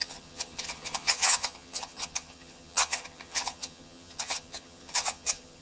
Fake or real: fake